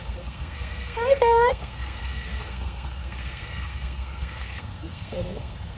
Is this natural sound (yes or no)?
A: no